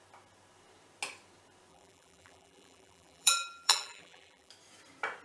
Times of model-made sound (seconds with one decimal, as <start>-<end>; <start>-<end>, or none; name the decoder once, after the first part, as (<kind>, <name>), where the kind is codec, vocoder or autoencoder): 1.7-4.5 (vocoder, BigVGAN v2)